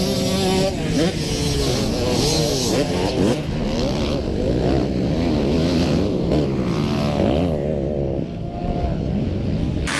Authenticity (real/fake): real